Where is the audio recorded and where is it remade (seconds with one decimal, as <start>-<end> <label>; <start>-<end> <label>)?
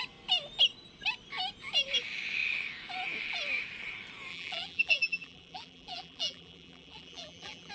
0.0-4.3 recorded; 4.3-7.7 remade